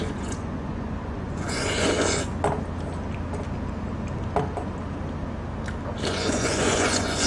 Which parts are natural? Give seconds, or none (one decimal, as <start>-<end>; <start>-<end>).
2.3-6.1